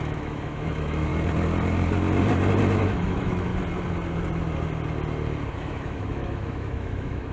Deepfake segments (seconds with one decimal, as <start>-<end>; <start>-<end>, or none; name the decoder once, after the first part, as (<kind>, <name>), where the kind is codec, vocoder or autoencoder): 0.0-1.1 (autoencoder, DAC-VAE); 2.8-3.5; 5.5-7.3